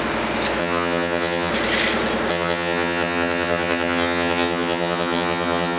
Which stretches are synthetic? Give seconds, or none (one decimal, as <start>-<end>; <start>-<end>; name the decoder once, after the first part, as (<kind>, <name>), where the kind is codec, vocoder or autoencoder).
0.6-1.5 (vocoder, HiFi-GAN); 2.3-5.8